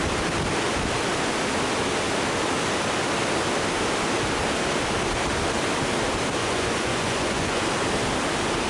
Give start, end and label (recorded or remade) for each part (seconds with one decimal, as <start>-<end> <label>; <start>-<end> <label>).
0.0-6.4 recorded; 6.4-7.6 remade; 7.6-8.7 recorded